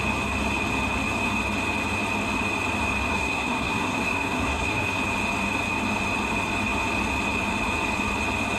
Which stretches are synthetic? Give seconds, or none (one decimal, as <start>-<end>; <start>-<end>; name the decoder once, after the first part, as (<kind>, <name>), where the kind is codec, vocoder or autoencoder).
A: 3.1-5.0 (codec, SNAC)